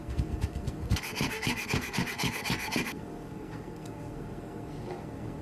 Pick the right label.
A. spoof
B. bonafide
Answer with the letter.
A